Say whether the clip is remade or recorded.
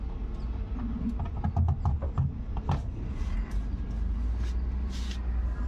recorded